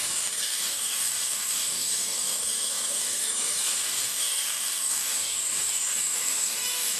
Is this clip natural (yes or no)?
no